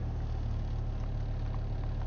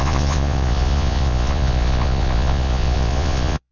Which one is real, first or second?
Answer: first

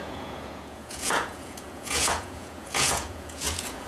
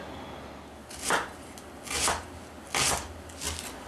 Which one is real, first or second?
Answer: second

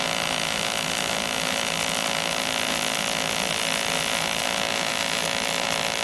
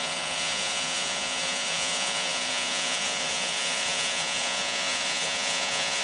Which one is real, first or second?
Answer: first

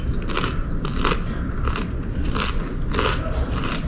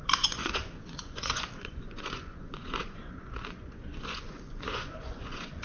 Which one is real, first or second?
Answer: first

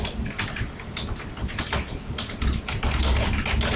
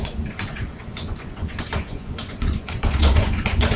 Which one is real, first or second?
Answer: first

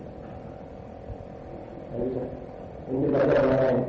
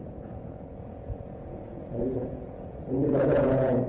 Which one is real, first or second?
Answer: first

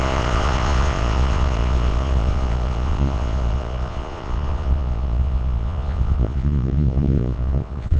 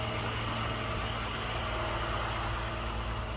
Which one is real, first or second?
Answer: second